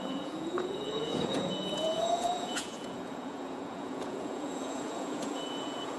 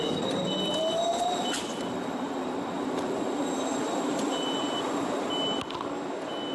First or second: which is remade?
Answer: first